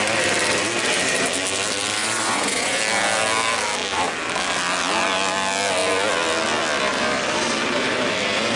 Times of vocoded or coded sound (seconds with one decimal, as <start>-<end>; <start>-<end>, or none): 2.0-2.8